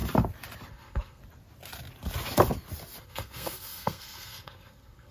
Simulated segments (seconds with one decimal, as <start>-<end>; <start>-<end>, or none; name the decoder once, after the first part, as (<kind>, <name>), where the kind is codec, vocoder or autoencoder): 0.7-1.2 (codec, SNAC); 3.0-5.1